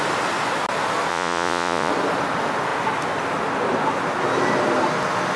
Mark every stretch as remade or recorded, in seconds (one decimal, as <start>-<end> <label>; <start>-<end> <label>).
0.0-1.1 recorded; 1.1-1.9 remade; 1.9-5.4 recorded